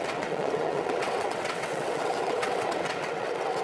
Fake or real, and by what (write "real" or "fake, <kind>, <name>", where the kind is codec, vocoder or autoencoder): fake, vocoder, WaveNeXt